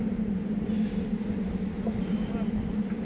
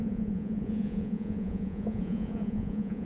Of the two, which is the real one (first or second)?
first